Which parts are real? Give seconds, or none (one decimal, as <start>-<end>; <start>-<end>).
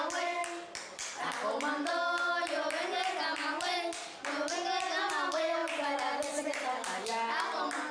0.0-7.9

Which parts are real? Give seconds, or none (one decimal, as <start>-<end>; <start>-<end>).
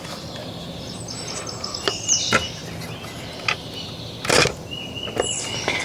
0.0-5.8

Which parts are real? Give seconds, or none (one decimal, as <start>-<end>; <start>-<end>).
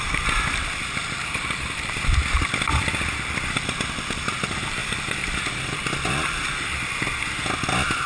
0.0-8.1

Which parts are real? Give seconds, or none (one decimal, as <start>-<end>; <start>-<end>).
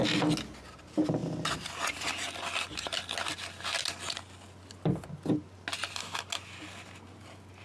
0.0-7.6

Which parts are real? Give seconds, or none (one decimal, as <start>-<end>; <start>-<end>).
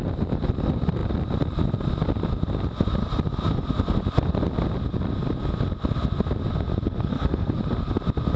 0.0-7.1; 7.6-8.4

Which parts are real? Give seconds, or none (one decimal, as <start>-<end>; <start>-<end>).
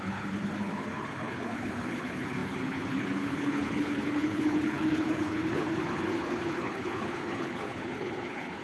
none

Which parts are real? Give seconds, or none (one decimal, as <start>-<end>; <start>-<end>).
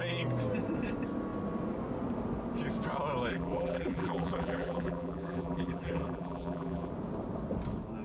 0.0-3.3; 6.9-8.0